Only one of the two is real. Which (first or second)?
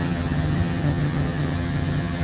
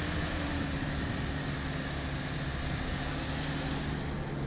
second